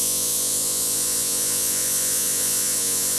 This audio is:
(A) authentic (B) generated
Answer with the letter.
B